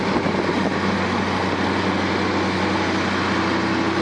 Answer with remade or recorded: recorded